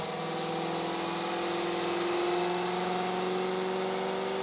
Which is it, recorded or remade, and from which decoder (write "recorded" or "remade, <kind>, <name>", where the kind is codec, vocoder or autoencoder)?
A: recorded